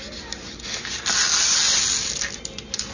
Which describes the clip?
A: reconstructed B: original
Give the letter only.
B